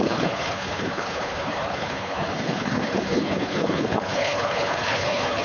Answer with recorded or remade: remade